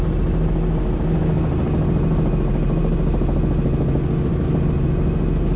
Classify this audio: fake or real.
real